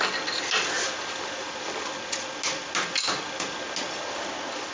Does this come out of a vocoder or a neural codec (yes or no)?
no